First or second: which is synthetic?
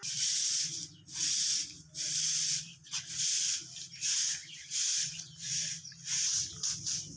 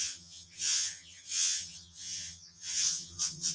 second